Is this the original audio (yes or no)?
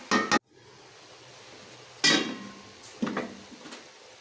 yes